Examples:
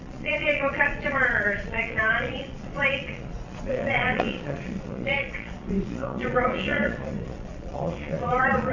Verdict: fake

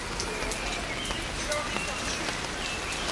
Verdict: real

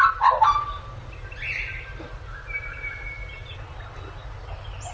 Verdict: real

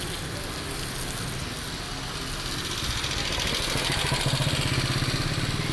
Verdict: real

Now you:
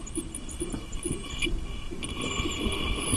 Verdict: real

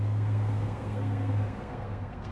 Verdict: fake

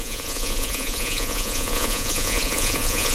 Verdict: fake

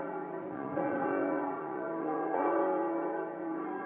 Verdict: fake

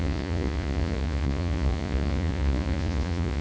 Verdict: fake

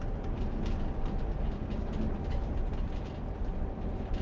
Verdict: real